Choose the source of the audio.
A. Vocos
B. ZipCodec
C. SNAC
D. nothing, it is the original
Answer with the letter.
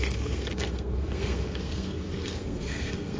C